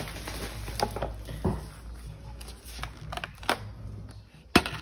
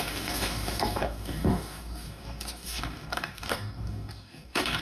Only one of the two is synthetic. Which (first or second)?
second